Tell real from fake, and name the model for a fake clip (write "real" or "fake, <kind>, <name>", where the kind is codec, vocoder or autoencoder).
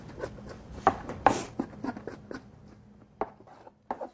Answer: real